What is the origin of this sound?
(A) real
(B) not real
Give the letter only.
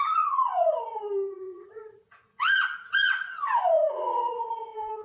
B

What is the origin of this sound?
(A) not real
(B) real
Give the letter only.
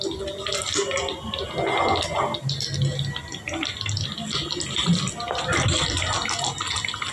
B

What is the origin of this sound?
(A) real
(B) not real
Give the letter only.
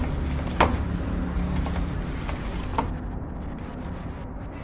A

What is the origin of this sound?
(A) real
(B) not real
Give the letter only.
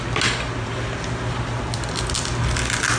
A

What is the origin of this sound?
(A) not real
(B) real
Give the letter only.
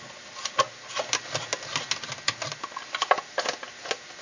B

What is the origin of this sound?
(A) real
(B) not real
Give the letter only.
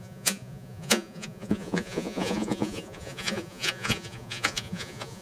B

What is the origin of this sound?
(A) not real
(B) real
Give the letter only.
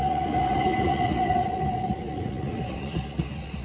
A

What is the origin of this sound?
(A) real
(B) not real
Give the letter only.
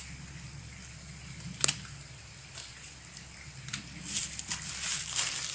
A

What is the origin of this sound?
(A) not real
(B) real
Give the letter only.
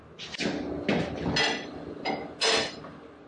B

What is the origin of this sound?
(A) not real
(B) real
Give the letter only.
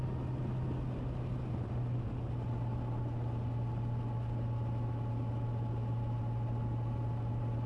B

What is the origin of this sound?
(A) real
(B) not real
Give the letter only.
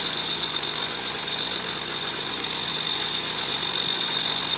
B